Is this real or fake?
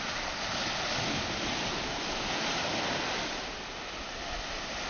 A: real